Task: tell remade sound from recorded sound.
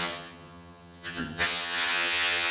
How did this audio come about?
remade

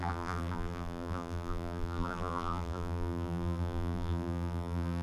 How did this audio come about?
remade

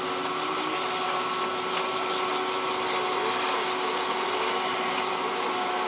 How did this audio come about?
recorded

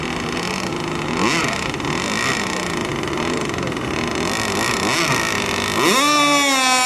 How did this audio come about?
recorded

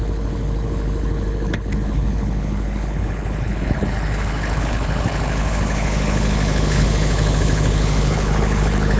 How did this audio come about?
remade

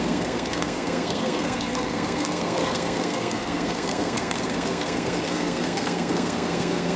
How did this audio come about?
remade